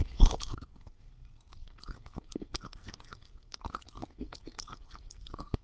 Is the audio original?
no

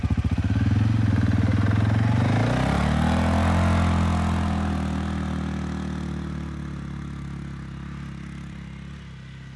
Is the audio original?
yes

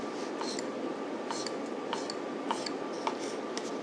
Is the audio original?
yes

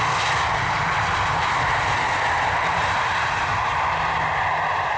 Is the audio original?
yes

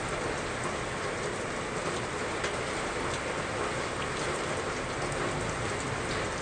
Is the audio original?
yes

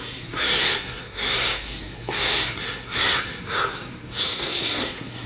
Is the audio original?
no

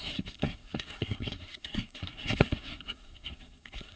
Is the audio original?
no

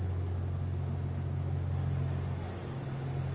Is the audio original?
yes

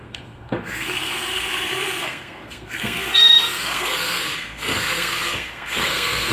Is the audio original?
no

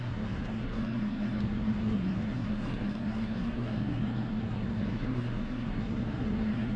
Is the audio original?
no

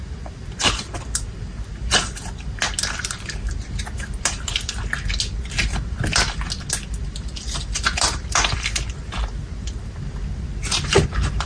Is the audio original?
yes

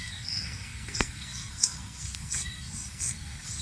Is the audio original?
no